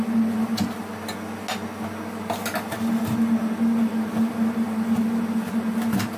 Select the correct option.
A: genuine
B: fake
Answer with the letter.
A